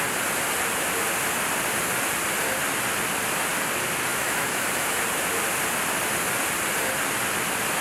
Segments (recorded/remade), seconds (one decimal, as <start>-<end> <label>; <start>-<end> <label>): 0.0-4.1 recorded; 4.1-5.0 remade; 5.0-7.8 recorded